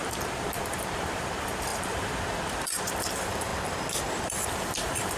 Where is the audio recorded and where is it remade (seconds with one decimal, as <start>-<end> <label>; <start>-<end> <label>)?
0.0-3.5 remade; 3.5-4.1 recorded; 4.1-5.2 remade